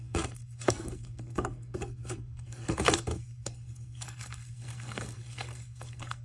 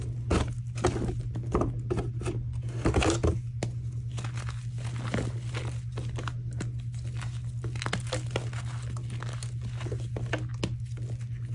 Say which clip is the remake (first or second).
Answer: first